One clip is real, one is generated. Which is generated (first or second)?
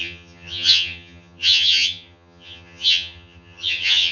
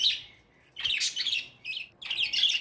first